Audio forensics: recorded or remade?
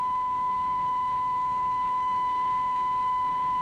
remade